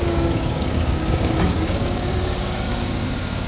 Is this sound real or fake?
fake